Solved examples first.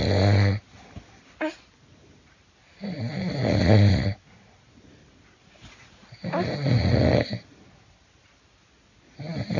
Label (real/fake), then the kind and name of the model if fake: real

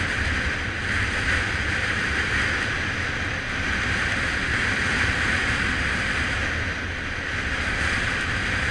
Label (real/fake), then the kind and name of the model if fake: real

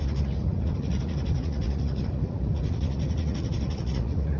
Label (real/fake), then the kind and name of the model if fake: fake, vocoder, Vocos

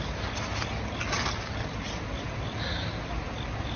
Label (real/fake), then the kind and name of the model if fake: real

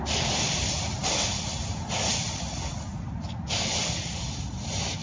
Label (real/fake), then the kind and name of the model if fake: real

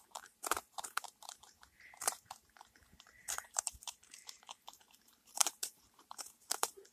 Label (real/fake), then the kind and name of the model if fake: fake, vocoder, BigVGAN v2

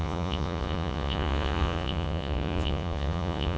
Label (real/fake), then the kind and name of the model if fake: fake, vocoder, Vocos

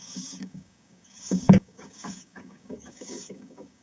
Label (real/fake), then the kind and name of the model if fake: fake, codec, DAC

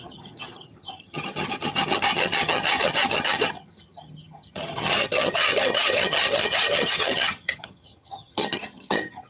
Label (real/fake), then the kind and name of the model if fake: fake, vocoder, HiFi-GAN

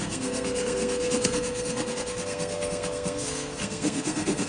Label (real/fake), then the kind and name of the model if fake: fake, codec, SNAC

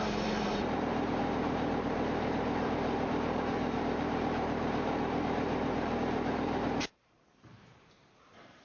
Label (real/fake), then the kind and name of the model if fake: fake, vocoder, BigVGAN v2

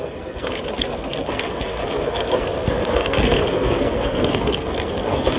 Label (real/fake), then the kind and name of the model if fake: fake, codec, SNAC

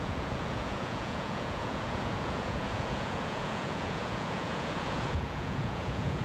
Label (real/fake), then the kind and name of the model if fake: fake, vocoder, Vocos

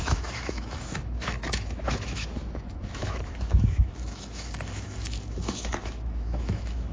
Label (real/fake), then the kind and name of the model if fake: fake, autoencoder, DAC-VAE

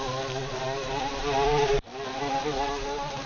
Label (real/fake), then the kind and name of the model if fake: real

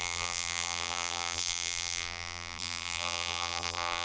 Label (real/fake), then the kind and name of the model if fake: fake, vocoder, BigVGAN v2